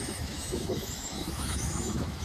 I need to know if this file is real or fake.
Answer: fake